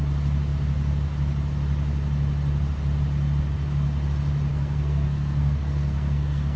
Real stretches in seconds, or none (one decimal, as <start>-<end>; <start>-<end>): 0.0-4.5